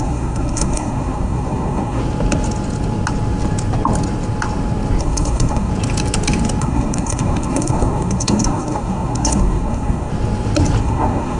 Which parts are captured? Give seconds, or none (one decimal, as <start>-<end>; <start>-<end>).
2.0-5.0; 5.7-6.6; 10.1-10.8